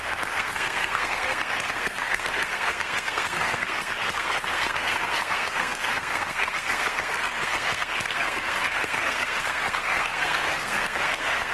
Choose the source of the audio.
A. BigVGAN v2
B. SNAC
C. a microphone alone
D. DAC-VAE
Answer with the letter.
B